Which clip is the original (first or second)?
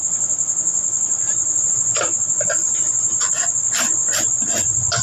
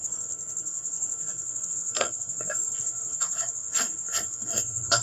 first